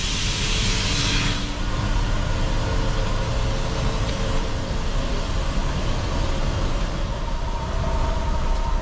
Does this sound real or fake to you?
real